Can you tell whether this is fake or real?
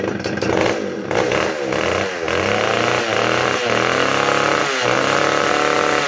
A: real